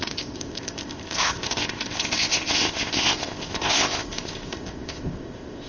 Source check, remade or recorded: remade